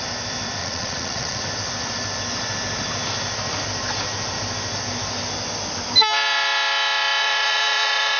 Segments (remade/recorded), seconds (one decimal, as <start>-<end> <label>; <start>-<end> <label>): 0.0-0.6 recorded; 0.6-1.4 remade; 1.4-7.2 recorded; 7.2-8.2 remade